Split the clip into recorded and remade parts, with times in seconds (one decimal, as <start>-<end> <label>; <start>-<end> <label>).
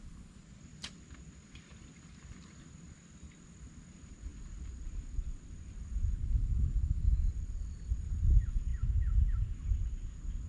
0.0-10.5 recorded